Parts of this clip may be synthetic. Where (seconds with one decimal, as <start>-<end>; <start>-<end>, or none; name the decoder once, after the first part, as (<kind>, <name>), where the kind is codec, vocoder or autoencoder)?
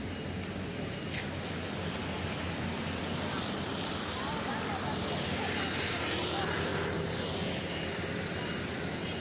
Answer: none